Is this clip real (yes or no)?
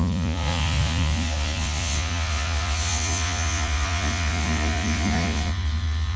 no